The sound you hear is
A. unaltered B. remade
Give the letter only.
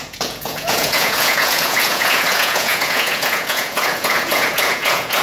B